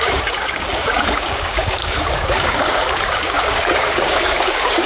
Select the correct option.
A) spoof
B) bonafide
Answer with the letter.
A